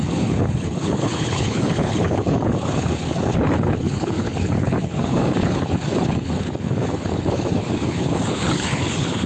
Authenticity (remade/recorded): remade